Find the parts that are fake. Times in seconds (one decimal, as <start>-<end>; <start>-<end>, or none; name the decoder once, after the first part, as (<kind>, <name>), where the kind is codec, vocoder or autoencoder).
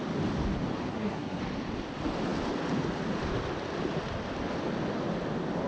0.9-1.4 (codec, SNAC)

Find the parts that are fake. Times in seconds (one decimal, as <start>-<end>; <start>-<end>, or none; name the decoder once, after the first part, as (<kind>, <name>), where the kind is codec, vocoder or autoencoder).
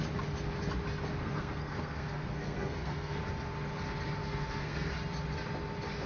1.2-3.2 (codec, SNAC); 4.2-4.9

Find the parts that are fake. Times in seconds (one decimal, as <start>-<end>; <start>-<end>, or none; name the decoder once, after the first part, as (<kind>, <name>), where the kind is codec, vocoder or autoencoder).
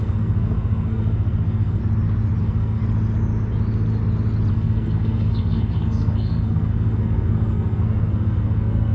0.0-1.8 (codec, SNAC); 2.4-2.8; 4.5-8.9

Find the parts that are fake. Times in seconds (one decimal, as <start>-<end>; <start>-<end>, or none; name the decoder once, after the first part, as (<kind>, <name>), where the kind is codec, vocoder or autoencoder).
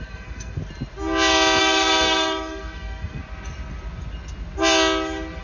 0.0-0.6 (codec, SNAC); 1.6-3.2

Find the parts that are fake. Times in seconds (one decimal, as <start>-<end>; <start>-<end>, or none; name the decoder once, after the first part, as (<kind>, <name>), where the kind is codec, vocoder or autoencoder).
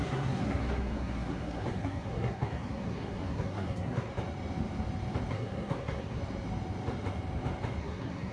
0.0-4.1 (codec, SNAC); 5.3-6.2; 7.8-8.3